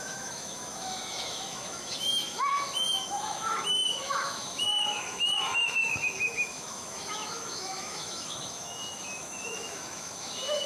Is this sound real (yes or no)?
no